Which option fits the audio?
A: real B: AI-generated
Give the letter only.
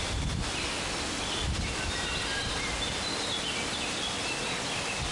A